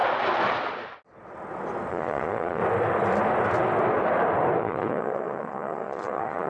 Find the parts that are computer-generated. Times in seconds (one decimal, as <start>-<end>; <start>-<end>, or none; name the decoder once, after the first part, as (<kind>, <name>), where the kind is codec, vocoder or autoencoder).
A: 1.9-2.6 (vocoder, Vocos); 4.6-6.5